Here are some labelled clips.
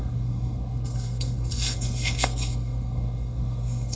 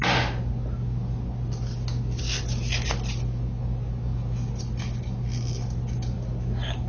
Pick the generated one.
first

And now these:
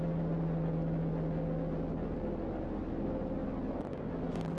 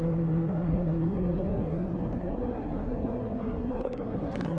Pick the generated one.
second